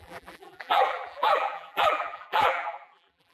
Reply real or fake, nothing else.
fake